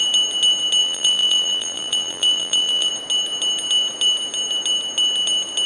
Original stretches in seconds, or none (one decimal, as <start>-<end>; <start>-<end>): 0.0-0.8; 2.9-5.7